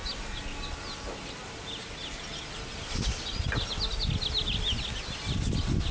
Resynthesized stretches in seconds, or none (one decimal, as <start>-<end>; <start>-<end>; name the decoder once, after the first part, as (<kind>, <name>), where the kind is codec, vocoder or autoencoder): none